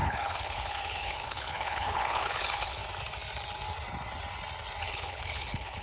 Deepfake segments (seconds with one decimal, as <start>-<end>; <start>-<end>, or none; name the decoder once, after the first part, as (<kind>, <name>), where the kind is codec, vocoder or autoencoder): 0.0-2.8 (codec, HILCodec); 4.8-5.8